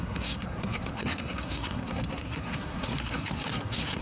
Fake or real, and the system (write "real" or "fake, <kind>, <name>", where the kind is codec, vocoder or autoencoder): fake, codec, SNAC